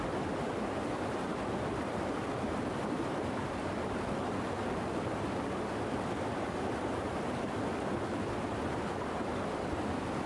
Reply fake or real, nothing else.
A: fake